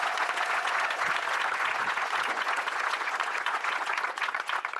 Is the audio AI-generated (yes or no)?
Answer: yes